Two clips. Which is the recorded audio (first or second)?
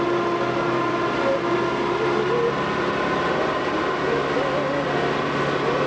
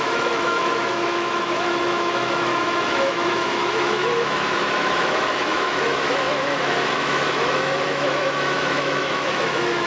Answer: first